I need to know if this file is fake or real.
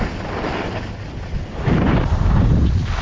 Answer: real